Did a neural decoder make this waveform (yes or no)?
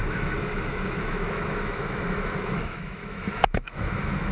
yes